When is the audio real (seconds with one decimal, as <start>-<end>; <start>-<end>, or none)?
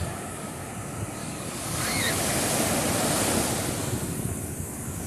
0.7-1.2; 2.1-3.8